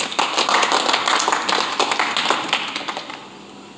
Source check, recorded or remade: recorded